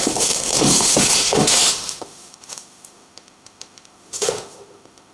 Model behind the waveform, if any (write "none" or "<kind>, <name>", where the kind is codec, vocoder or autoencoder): autoencoder, DAC-VAE